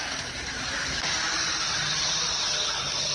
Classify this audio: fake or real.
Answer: real